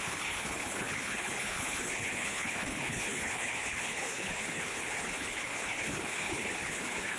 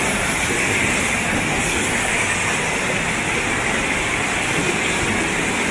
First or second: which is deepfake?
first